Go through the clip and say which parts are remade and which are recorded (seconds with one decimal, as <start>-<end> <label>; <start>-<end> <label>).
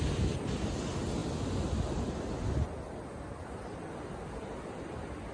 0.0-5.3 recorded